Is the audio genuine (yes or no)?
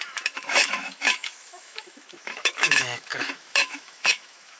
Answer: no